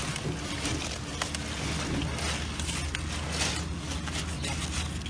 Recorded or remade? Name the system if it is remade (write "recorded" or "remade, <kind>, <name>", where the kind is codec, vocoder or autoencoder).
recorded